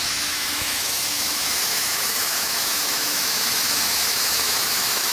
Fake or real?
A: fake